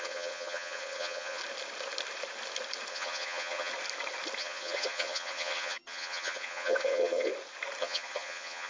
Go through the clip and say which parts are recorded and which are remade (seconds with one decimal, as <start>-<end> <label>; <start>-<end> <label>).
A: 0.0-1.4 remade; 1.4-2.9 recorded; 2.9-3.7 remade; 3.7-4.4 recorded; 4.4-7.3 remade; 7.3-7.8 recorded; 7.8-8.7 remade

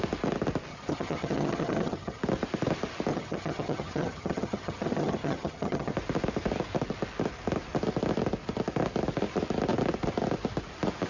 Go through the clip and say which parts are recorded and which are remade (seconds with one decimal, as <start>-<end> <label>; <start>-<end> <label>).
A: 0.0-0.7 recorded; 0.7-2.2 remade; 2.2-3.1 recorded; 3.1-5.9 remade; 5.9-11.1 recorded

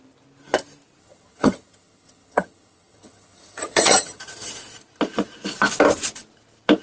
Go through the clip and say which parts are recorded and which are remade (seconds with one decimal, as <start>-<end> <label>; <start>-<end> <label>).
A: 0.0-1.0 recorded; 1.0-4.2 remade; 4.2-6.8 recorded